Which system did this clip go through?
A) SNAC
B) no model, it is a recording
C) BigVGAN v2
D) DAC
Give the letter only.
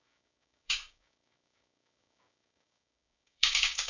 D